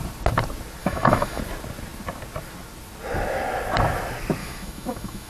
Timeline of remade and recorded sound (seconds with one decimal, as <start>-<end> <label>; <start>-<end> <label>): 0.0-0.8 recorded; 0.8-1.4 remade; 1.4-4.4 recorded; 4.4-5.3 remade